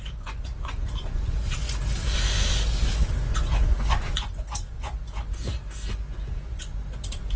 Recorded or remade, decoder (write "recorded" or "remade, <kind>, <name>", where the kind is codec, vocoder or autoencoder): remade, vocoder, Vocos